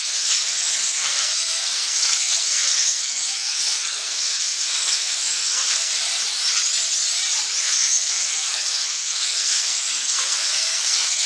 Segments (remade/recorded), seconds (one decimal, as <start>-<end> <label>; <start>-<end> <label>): 0.0-5.9 remade; 5.9-7.6 recorded; 7.6-11.3 remade